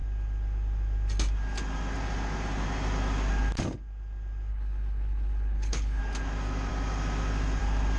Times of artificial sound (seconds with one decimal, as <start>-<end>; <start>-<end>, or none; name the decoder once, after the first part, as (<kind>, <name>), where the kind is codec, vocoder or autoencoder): 4.5-6.0 (codec, HILCodec)